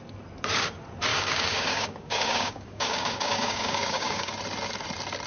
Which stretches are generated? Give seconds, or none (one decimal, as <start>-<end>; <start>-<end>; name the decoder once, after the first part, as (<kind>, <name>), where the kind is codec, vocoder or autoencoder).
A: 1.1-4.3 (codec, DAC)